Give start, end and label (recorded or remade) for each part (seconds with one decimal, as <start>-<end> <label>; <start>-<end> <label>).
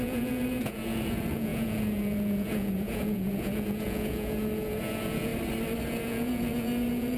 0.0-5.3 remade; 5.3-5.9 recorded; 5.9-7.2 remade